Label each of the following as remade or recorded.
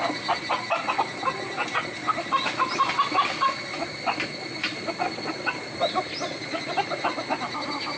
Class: recorded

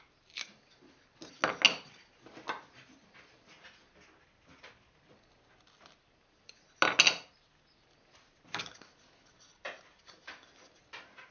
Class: recorded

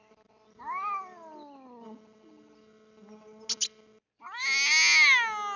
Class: recorded